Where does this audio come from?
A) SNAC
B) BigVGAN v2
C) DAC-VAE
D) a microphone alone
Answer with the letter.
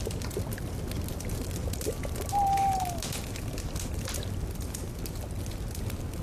D